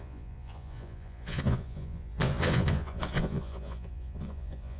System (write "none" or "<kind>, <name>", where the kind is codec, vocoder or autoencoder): vocoder, Vocos